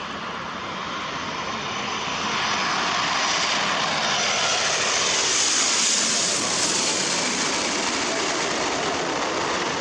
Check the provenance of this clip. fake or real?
real